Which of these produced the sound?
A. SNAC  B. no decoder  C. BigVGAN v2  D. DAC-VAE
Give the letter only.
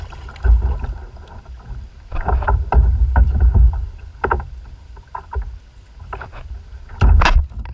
B